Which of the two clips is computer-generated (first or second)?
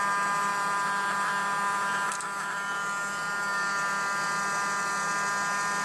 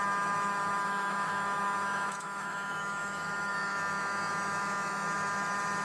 second